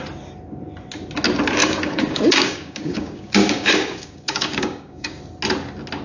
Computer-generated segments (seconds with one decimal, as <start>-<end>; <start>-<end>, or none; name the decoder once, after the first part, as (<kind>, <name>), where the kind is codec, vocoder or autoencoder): 1.6-5.2 (codec, DAC)